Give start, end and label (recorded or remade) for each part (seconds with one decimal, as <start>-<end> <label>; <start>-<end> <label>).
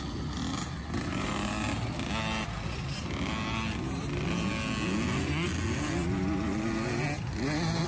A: 0.0-7.9 recorded